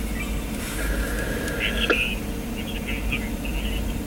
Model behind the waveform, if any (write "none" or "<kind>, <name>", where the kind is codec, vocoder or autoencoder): none